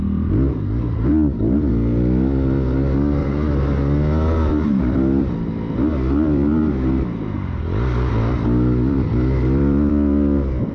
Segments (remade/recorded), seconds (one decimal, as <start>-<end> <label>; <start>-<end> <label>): 0.0-1.1 recorded; 1.1-1.7 remade; 1.7-3.2 recorded; 3.2-3.8 remade; 3.8-4.7 recorded; 4.7-9.9 remade; 9.9-10.7 recorded

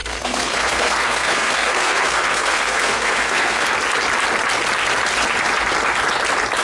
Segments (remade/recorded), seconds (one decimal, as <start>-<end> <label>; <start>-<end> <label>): 0.0-3.7 remade; 3.7-6.6 recorded

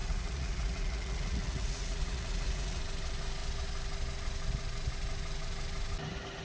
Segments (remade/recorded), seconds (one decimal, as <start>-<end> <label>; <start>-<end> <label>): 0.0-2.8 remade; 2.8-6.4 recorded

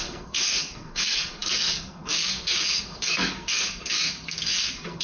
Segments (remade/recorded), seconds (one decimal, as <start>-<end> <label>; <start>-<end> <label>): 0.0-5.0 remade